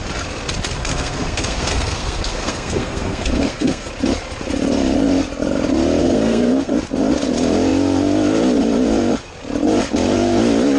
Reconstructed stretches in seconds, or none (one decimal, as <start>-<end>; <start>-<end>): 0.8-3.9; 6.0-6.7